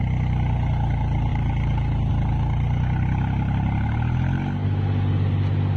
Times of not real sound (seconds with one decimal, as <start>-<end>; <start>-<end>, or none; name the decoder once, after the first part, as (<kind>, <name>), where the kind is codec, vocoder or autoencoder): none